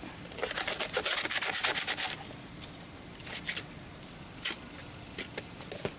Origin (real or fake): real